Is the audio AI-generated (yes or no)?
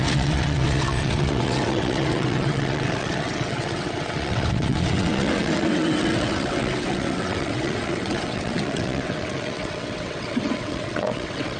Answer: yes